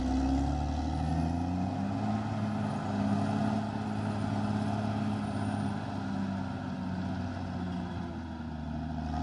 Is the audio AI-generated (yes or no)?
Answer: no